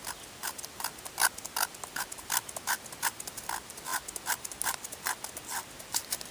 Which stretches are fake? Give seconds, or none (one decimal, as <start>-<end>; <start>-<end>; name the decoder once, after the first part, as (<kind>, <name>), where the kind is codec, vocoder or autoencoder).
none